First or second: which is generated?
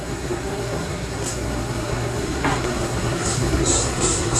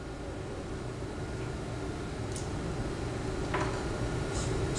first